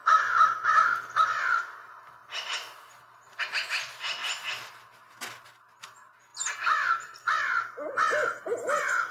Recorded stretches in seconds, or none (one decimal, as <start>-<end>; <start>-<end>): 0.0-9.1